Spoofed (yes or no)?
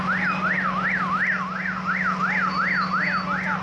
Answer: no